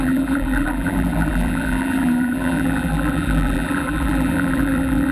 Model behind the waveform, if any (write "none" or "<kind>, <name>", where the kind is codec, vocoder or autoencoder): vocoder, BigVGAN v2